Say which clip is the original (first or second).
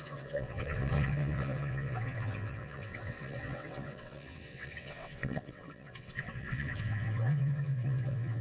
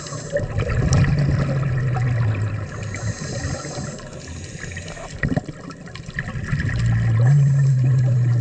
second